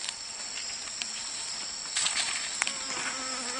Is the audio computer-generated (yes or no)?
no